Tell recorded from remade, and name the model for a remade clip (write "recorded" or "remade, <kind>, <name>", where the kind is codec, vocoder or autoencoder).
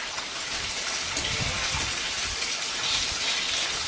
recorded